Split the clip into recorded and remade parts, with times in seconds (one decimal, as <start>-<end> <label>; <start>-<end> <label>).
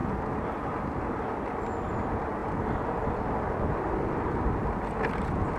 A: 0.0-2.4 recorded; 2.4-4.8 remade; 4.8-5.6 recorded